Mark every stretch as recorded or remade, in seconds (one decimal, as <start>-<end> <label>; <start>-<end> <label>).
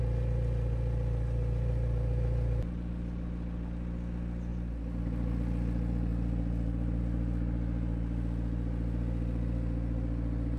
0.0-10.6 recorded